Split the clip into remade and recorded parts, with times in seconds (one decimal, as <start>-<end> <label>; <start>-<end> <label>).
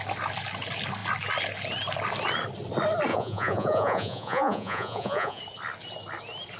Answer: 0.0-3.1 recorded; 3.1-5.4 remade; 5.4-6.6 recorded